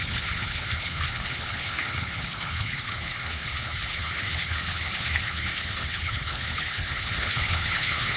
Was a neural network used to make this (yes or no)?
yes